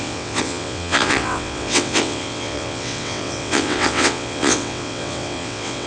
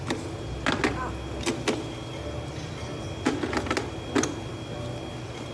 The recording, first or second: second